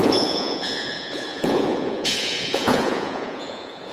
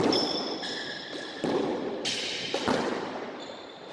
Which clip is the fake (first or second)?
first